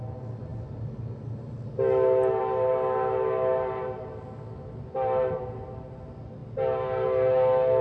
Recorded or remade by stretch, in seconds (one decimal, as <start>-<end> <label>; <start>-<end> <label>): 0.0-7.8 recorded